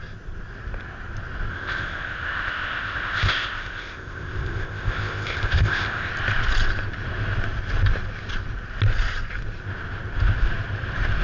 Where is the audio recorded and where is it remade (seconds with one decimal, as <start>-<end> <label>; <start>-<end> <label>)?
0.0-1.5 recorded; 1.5-6.1 remade; 6.1-11.2 recorded